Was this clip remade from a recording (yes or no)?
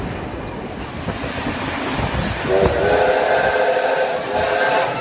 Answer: no